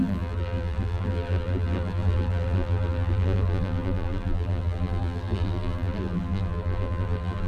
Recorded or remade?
remade